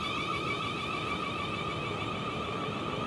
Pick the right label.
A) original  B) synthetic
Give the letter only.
B